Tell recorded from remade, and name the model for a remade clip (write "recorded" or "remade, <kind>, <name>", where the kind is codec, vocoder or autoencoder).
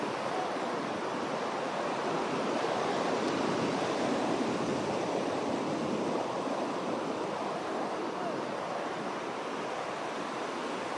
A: remade, vocoder, BigVGAN v2